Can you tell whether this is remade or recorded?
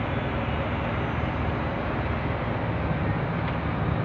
recorded